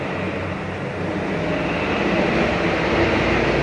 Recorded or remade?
recorded